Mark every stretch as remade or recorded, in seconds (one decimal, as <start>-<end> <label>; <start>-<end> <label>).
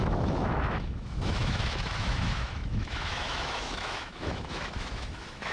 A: 0.0-5.5 remade